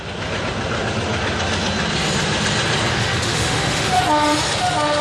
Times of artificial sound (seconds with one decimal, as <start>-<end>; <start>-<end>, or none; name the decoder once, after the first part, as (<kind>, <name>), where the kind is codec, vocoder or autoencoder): 2.9-4.0 (autoencoder, DAC-VAE)